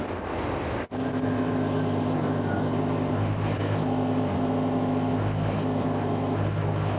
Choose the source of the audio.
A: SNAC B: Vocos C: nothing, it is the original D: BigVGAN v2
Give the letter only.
C